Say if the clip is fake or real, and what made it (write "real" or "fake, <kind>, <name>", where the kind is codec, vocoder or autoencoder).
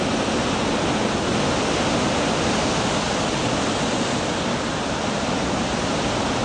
real